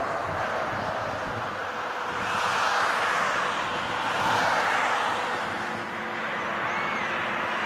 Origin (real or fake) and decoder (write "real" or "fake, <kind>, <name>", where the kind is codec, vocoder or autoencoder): real